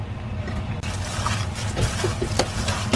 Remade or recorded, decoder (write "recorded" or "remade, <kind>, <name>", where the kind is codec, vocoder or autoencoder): recorded